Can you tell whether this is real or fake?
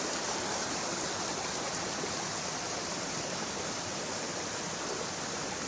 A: real